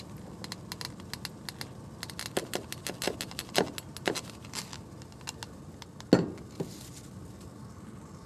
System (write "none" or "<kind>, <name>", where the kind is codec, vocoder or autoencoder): none